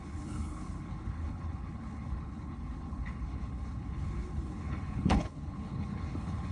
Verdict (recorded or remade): remade